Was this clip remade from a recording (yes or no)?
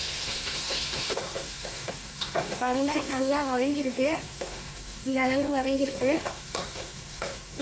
yes